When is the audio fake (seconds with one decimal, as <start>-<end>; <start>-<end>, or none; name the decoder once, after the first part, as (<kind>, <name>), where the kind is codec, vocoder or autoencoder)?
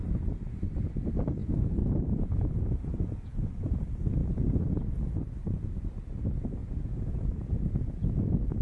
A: 1.4-3.4 (vocoder, Vocos); 4.2-4.7; 6.6-7.4